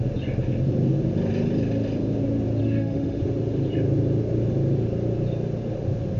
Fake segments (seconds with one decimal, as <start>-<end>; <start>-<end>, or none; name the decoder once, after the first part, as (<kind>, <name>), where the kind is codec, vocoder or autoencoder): 2.6-3.2 (autoencoder, DAC-VAE)